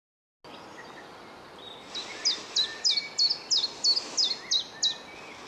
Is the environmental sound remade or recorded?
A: recorded